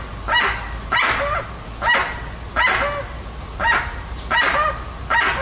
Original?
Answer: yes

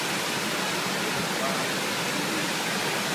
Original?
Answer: yes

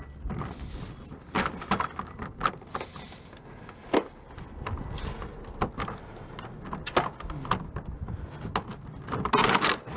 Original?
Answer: yes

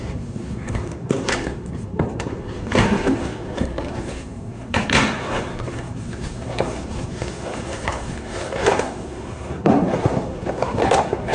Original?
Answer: no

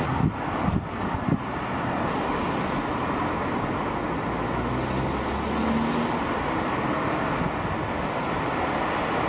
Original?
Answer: yes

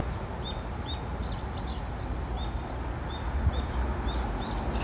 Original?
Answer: yes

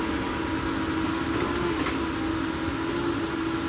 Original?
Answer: yes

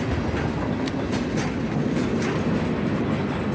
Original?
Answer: yes